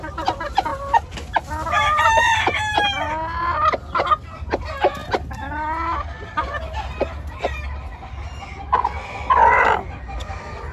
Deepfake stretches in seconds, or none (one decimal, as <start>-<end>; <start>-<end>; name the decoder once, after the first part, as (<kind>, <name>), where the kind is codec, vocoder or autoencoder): none